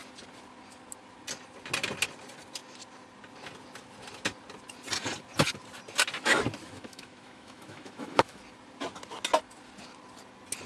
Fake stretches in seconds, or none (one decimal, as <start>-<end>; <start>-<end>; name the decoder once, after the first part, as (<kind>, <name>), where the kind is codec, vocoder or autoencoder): 6.6-8.4 (autoencoder, DAC-VAE)